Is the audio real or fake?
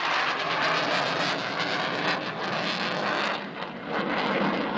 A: real